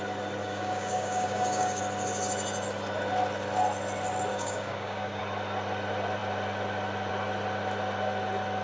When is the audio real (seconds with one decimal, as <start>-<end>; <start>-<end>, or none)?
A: 0.0-0.4; 1.8-4.3; 5.2-8.6